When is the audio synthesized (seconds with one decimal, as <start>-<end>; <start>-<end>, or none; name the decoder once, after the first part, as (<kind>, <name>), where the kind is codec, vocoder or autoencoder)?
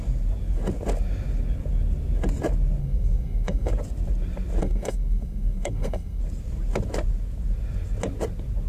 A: 2.8-3.7 (codec, SNAC); 4.6-6.2